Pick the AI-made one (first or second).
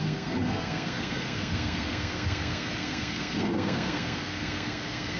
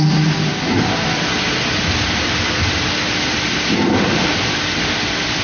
first